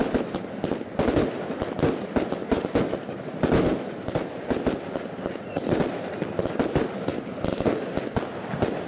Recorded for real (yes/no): yes